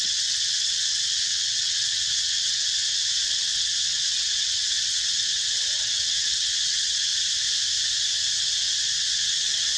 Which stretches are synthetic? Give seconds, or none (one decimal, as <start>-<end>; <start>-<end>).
0.0-7.1; 9.0-9.8